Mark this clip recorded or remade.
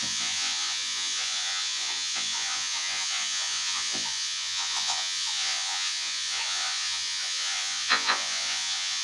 remade